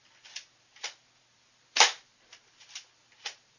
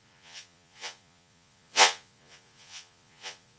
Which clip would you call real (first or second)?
first